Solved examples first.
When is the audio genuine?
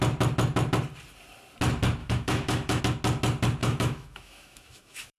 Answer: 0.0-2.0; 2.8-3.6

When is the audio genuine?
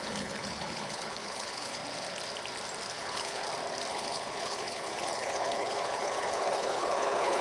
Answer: 1.8-2.9; 3.4-3.9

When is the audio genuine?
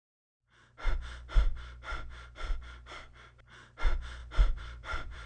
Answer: 0.9-4.2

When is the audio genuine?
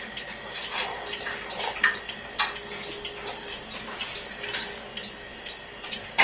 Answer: 0.0-6.2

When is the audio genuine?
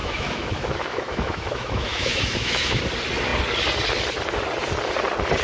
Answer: 2.8-5.4